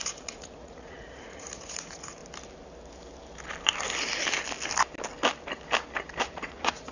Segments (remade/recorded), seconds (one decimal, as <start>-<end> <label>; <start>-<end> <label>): 0.0-2.2 remade; 2.2-6.3 recorded; 6.3-6.9 remade

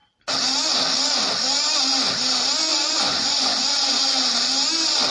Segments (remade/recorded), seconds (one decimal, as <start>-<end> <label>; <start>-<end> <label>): 0.0-2.7 recorded; 2.7-4.0 remade; 4.0-5.1 recorded

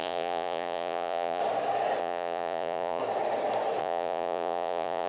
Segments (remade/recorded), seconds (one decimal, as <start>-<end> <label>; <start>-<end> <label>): 0.0-1.4 remade; 1.4-2.0 recorded; 2.0-3.0 remade; 3.0-3.8 recorded; 3.8-5.1 remade

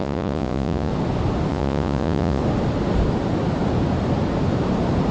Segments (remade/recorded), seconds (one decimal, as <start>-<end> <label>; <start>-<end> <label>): 0.0-0.9 remade; 0.9-1.5 recorded; 1.5-2.4 remade; 2.4-5.1 recorded

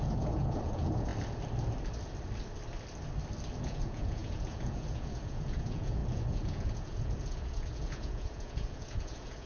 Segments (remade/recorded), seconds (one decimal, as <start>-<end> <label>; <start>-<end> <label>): 0.0-1.1 remade; 1.1-3.6 recorded; 3.6-9.5 remade